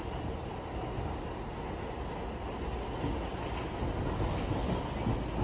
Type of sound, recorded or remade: recorded